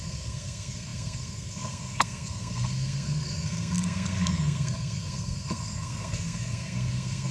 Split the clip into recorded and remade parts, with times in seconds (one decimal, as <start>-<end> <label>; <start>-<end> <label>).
0.0-7.3 remade